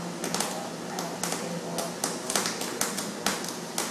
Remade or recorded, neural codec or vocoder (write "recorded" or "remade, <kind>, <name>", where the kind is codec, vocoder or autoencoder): recorded